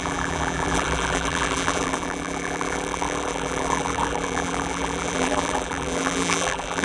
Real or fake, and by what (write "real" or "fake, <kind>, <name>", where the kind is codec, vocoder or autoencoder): fake, vocoder, BigVGAN v2